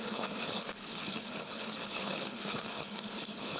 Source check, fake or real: fake